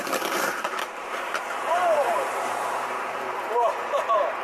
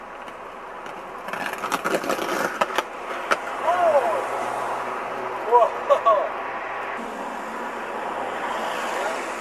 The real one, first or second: second